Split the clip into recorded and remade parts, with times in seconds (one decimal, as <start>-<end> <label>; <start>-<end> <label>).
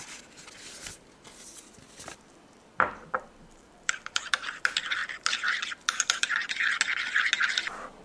0.0-2.7 recorded; 2.7-4.3 remade; 4.3-8.0 recorded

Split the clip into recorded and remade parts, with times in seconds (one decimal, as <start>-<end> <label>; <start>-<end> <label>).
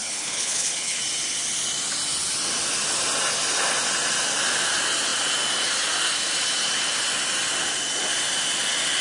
0.0-1.0 remade; 1.0-9.0 recorded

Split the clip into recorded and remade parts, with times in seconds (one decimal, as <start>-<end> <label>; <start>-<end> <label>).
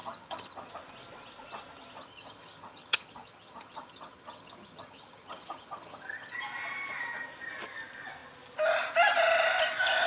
0.0-0.7 remade; 0.7-2.0 recorded; 2.0-6.4 remade; 6.4-10.1 recorded